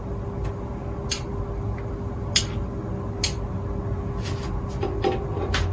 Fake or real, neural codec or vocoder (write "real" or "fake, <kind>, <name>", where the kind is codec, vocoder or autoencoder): real